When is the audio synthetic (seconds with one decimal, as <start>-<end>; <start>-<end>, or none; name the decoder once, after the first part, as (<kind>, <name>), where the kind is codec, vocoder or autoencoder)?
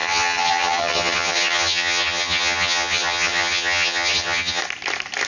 0.0-4.6 (vocoder, HiFi-GAN)